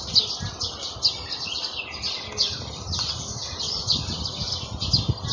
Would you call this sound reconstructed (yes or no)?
no